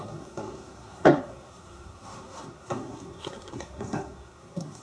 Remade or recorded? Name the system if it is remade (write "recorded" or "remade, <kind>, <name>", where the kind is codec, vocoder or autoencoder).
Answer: remade, codec, SNAC